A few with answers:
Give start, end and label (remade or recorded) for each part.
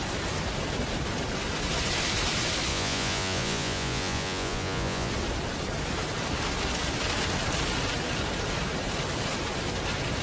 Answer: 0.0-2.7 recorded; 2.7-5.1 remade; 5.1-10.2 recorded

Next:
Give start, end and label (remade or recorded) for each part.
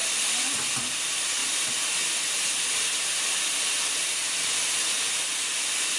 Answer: 0.0-6.0 recorded